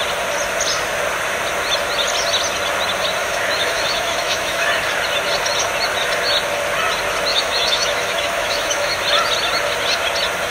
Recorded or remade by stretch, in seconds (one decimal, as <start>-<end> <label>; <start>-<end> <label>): 0.0-3.2 recorded; 3.2-4.7 remade; 4.7-7.3 recorded; 7.3-9.0 remade; 9.0-10.5 recorded